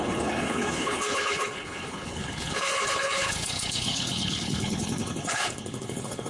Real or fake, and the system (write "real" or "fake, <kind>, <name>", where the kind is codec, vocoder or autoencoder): fake, codec, HILCodec